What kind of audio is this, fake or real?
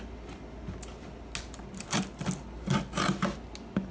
real